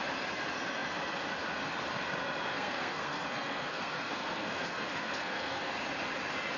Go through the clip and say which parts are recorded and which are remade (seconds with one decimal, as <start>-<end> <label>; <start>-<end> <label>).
0.0-2.5 recorded; 2.5-5.7 remade; 5.7-6.6 recorded